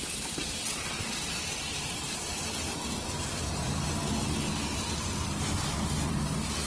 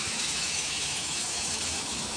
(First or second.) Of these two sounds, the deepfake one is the second